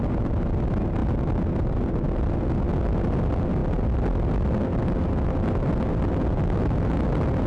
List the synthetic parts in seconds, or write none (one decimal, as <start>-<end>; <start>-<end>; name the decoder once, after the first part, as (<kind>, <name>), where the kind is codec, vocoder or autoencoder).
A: none